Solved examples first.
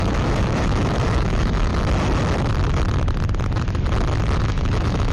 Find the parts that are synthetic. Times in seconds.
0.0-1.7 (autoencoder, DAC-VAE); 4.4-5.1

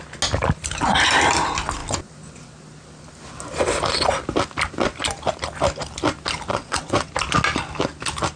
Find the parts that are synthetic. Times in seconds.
6.5-7.1 (vocoder, WaveNeXt)

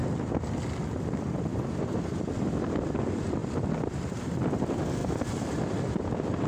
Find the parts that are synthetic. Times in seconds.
1.5-2.0 (vocoder, BigVGAN v2); 3.4-4.2; 5.0-5.9

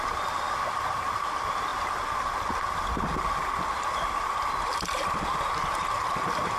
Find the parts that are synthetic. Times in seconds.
none

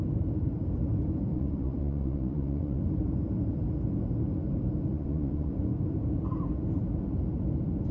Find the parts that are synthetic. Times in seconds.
1.3-2.8 (vocoder, Vocos); 4.9-5.5

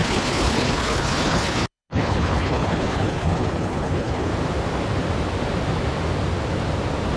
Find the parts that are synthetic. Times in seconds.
0.0-4.3 (codec, HILCodec)